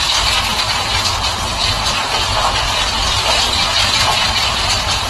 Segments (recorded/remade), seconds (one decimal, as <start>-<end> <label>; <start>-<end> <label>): 0.0-3.7 recorded; 3.7-5.1 remade